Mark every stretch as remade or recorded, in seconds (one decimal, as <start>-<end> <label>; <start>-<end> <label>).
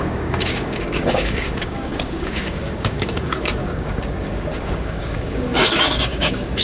0.0-6.6 remade